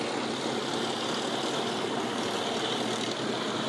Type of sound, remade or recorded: recorded